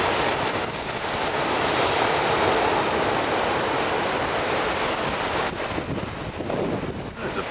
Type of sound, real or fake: real